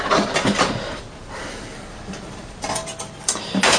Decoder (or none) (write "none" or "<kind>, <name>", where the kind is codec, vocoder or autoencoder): vocoder, BigVGAN v2